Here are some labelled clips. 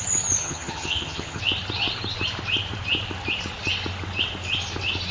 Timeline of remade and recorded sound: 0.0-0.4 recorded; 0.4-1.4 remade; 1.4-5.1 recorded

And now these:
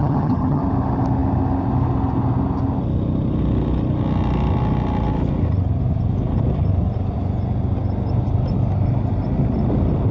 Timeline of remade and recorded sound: 0.0-0.6 remade; 0.6-10.1 recorded